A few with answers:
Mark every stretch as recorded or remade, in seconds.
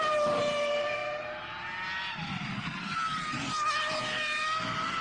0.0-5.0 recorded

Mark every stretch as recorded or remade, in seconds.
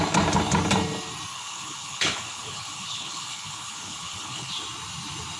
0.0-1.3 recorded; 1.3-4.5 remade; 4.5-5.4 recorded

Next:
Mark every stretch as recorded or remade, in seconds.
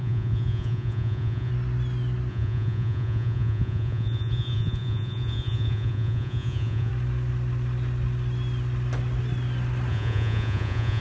0.0-1.5 remade; 1.5-2.3 recorded; 2.3-6.9 remade; 6.9-9.9 recorded; 9.9-11.0 remade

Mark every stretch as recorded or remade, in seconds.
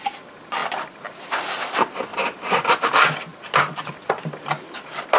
0.0-2.1 recorded; 2.1-2.7 remade; 2.7-5.2 recorded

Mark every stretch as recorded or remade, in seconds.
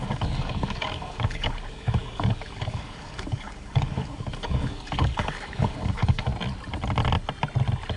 0.0-6.3 remade; 6.3-8.0 recorded